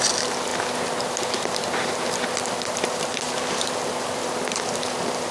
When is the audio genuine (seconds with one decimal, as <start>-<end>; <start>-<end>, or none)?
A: none